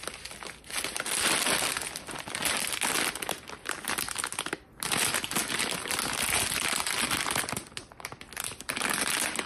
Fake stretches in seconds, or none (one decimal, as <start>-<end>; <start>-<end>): none